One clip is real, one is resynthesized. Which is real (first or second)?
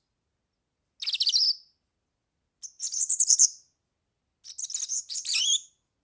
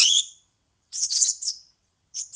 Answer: first